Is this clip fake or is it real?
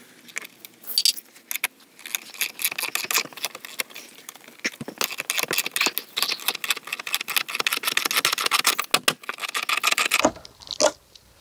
real